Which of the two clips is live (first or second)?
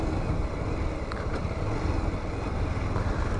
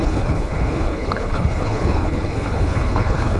first